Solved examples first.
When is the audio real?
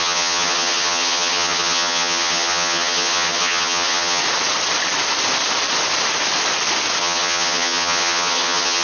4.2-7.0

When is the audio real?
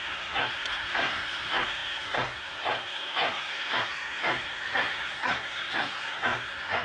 none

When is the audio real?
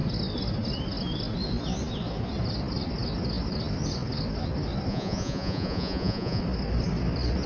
0.0-4.9; 6.4-7.5